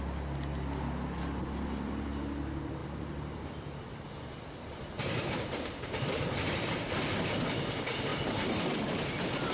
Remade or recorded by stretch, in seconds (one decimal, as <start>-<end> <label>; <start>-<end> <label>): 0.0-2.8 recorded; 2.8-6.9 remade; 6.9-8.1 recorded; 8.1-8.6 remade; 8.6-9.5 recorded